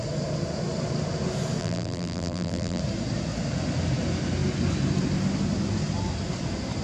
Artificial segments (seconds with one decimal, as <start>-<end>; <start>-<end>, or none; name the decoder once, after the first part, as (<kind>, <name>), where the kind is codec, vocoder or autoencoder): 1.6-2.8 (vocoder, BigVGAN v2)